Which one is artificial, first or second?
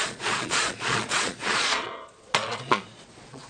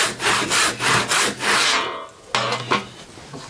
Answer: first